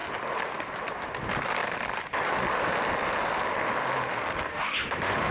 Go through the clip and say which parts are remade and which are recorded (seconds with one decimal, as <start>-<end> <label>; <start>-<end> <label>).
0.0-4.5 recorded; 4.5-5.3 remade